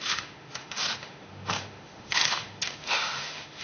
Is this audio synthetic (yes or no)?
yes